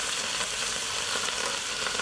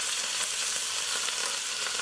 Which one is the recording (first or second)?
second